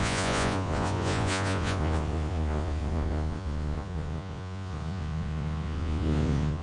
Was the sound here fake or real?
fake